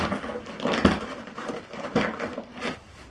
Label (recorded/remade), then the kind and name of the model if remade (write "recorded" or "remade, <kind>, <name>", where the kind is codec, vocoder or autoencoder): recorded